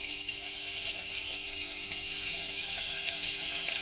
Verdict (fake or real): fake